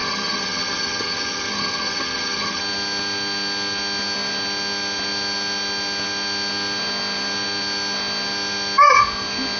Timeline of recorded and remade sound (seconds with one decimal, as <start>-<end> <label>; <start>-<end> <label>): 0.0-2.6 remade; 2.6-9.6 recorded